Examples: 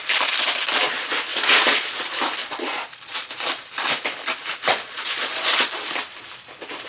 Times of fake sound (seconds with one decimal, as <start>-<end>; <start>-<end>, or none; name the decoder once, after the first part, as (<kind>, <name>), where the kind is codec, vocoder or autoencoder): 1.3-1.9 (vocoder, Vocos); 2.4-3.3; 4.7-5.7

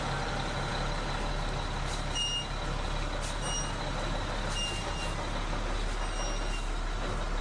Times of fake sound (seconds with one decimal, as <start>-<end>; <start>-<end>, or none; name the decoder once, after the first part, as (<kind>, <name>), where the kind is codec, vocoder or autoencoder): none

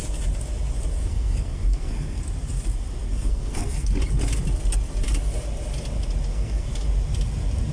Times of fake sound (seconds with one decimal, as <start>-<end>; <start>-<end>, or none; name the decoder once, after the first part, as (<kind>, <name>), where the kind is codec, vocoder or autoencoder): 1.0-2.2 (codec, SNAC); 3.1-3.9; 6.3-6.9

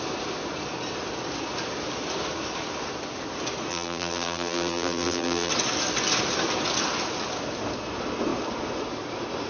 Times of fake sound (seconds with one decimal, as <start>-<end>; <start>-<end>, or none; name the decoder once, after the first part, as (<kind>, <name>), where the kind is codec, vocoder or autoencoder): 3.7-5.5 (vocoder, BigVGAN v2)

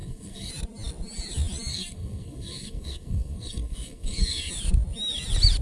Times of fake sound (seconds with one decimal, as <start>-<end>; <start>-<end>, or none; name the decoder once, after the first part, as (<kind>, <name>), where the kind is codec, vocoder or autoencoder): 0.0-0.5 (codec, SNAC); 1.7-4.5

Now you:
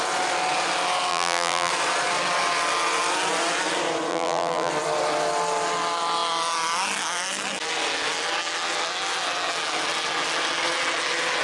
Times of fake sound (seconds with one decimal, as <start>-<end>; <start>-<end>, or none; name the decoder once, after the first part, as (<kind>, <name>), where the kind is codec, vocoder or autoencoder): 1.1-1.7 (vocoder, BigVGAN v2); 4.1-4.7

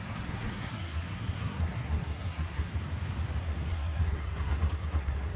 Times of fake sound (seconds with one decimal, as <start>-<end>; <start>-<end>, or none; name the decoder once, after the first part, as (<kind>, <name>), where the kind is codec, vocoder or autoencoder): 0.0-2.7 (codec, SNAC); 3.4-5.4